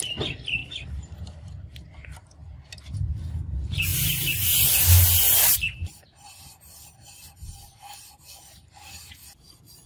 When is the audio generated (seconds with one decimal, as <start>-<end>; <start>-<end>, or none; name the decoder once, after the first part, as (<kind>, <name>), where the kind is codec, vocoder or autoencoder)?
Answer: none